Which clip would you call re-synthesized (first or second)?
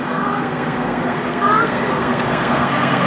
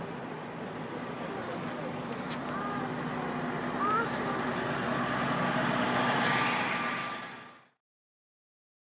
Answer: first